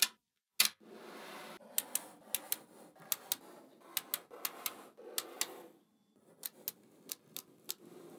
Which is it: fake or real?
real